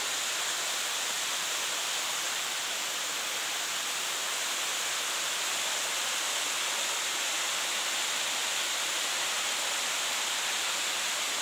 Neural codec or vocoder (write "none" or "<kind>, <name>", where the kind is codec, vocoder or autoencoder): none